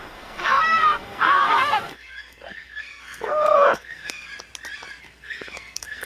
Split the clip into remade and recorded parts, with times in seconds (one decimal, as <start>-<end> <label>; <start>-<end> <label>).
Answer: 0.0-4.3 remade; 4.3-5.0 recorded; 5.0-6.1 remade